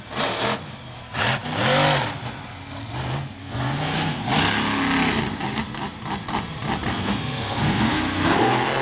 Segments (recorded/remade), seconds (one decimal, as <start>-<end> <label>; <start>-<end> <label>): 0.0-3.4 recorded; 3.4-4.2 remade; 4.2-6.9 recorded; 6.9-8.8 remade